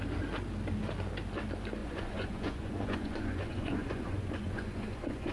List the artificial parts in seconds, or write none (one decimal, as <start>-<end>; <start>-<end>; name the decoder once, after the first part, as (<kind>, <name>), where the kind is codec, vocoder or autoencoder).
1.8-5.3 (vocoder, Vocos)